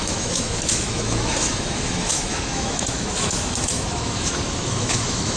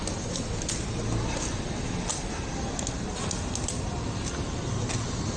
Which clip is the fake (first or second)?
first